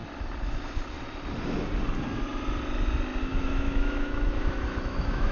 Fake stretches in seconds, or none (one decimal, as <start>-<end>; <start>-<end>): 3.2-5.3